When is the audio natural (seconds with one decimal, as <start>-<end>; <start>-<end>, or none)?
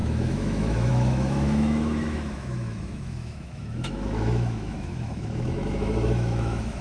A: none